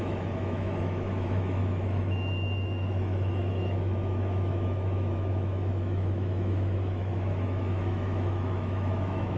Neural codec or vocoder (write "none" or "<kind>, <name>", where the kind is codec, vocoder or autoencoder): autoencoder, DAC-VAE